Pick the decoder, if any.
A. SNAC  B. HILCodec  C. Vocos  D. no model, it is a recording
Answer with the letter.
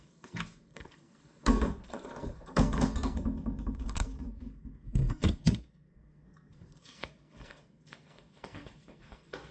A